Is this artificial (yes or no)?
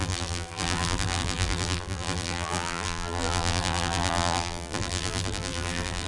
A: yes